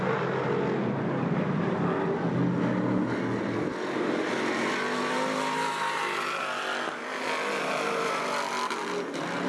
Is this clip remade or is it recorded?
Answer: recorded